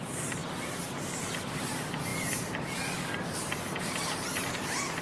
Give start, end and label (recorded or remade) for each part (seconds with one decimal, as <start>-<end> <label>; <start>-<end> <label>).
0.0-5.0 recorded